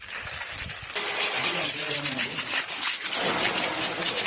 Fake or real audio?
real